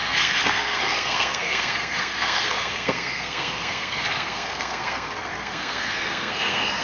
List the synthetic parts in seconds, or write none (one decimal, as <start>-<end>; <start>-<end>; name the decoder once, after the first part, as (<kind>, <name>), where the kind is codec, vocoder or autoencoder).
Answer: 0.0-6.8 (codec, SNAC)